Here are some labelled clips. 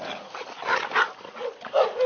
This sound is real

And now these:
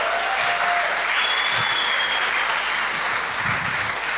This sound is real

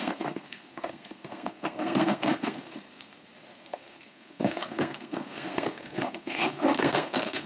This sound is fake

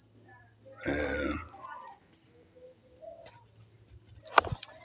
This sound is real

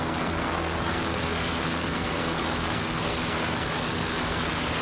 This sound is fake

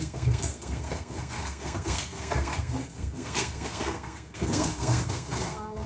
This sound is fake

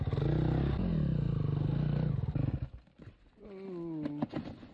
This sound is real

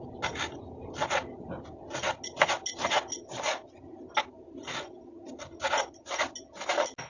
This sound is real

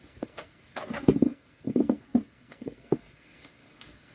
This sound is fake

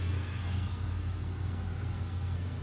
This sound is fake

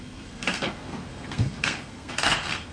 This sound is fake